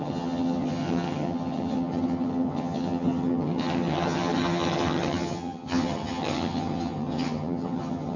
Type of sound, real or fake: fake